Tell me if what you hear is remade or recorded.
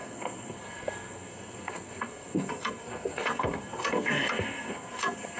remade